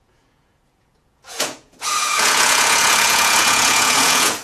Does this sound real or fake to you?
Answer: fake